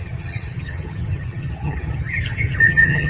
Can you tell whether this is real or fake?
fake